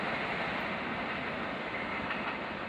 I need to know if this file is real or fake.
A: real